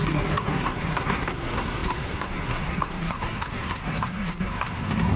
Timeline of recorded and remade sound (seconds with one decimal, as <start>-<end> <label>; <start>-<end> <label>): 0.0-5.2 remade